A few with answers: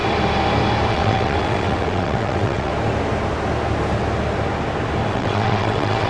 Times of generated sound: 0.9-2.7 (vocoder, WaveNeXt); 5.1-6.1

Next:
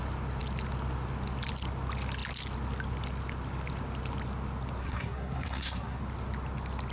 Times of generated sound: 4.8-6.0 (codec, SNAC)

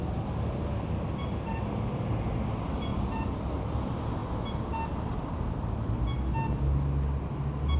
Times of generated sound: 2.9-3.5 (vocoder, BigVGAN v2)

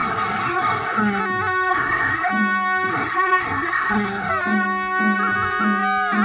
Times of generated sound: 0.0-1.2 (codec, SNAC); 1.7-2.3; 2.9-4.3

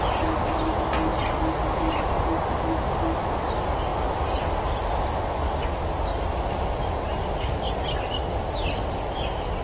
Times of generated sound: 6.1-7.2 (vocoder, BigVGAN v2)

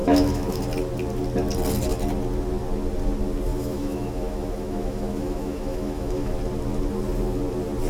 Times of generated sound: 0.0-0.6 (autoencoder, DAC-VAE); 3.5-6.3